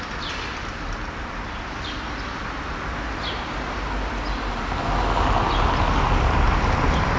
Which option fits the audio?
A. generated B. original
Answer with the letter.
B